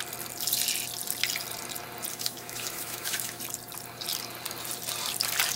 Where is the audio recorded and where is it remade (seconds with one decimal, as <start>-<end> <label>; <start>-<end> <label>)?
0.0-2.1 recorded; 2.1-3.4 remade; 3.4-5.6 recorded